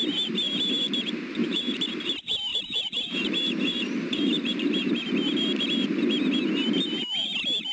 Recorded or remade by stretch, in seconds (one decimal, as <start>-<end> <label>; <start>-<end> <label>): 0.0-1.4 recorded; 1.4-1.9 remade; 1.9-2.5 recorded; 2.5-5.0 remade; 5.0-7.7 recorded